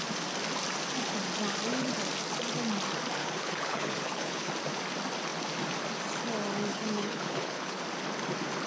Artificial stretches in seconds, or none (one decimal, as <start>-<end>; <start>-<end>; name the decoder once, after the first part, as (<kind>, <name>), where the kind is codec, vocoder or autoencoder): 3.2-4.5 (codec, HILCodec); 6.7-7.8